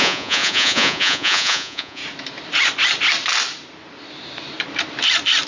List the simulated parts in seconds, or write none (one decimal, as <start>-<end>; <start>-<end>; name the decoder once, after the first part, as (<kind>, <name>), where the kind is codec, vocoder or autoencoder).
0.0-2.0 (vocoder, Vocos)